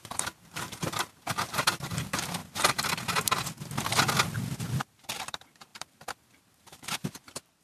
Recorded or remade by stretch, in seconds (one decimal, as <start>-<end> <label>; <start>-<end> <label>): 0.0-2.4 remade; 2.4-4.8 recorded; 4.8-7.6 remade

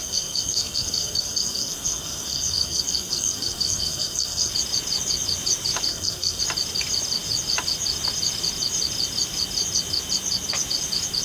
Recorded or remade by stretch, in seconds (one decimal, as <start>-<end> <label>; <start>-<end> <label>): 0.0-4.5 remade; 4.5-5.9 recorded; 5.9-6.4 remade; 6.4-11.2 recorded

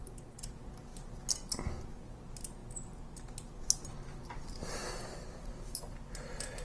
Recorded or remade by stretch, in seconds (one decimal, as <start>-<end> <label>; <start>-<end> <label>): 0.0-6.6 recorded

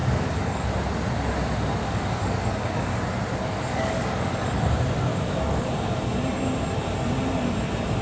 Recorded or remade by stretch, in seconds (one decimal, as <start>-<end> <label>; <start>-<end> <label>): 0.0-0.7 remade; 0.7-1.8 recorded; 1.8-3.0 remade; 3.0-3.4 recorded; 3.4-4.6 remade; 4.6-5.1 recorded; 5.1-5.7 remade; 5.7-8.0 recorded

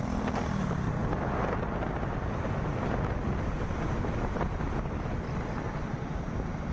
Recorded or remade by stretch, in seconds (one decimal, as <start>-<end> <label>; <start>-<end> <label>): 0.0-6.7 recorded

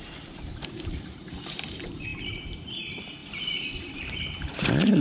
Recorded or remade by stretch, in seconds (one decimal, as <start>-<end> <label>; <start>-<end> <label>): 0.0-3.2 remade; 3.2-3.8 recorded; 3.8-5.0 remade

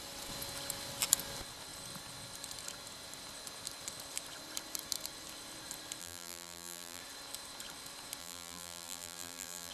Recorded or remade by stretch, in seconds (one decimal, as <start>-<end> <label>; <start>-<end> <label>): 0.0-6.0 recorded; 6.0-7.0 remade; 7.0-8.2 recorded; 8.2-9.7 remade

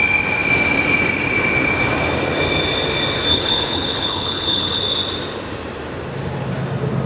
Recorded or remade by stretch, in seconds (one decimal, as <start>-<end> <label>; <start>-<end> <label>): 0.0-3.3 recorded; 3.3-4.8 remade; 4.8-7.1 recorded